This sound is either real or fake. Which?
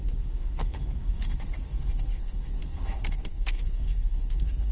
fake